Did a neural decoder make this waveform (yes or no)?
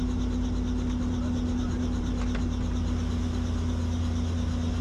no